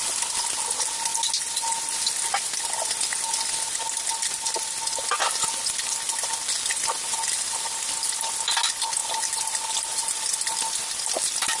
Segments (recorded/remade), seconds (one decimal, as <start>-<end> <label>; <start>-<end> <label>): 0.0-9.0 recorded; 9.0-11.6 remade